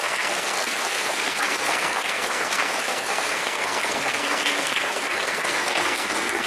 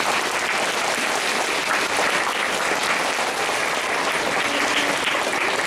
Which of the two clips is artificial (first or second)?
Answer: first